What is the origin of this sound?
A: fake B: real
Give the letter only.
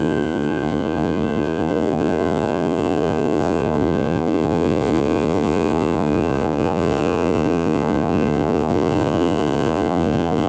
A